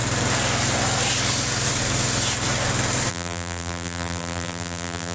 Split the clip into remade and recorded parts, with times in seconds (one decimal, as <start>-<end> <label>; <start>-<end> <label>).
0.0-3.1 recorded; 3.1-5.1 remade